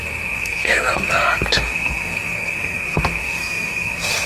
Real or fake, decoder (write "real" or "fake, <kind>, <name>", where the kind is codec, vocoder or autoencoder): fake, codec, SNAC